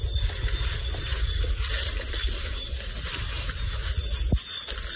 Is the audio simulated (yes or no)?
no